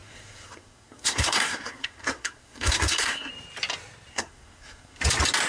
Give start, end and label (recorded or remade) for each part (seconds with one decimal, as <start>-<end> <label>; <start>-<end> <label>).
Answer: 0.0-3.3 remade; 3.3-4.1 recorded; 4.1-5.0 remade; 5.0-5.5 recorded